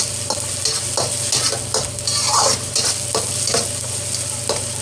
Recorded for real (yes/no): yes